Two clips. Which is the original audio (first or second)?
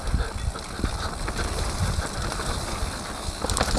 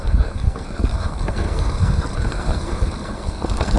first